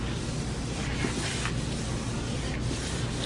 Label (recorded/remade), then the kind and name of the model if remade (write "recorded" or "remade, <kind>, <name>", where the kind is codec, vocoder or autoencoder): recorded